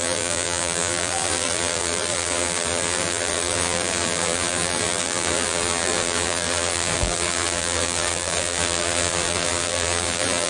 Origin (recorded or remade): remade